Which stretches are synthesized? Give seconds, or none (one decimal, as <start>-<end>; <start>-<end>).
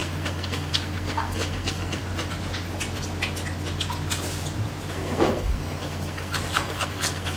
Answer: 0.0-2.0; 4.9-7.4